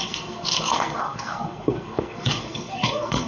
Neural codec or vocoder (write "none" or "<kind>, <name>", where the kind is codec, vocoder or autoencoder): codec, SNAC